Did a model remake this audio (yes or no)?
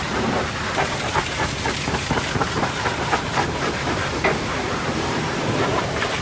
yes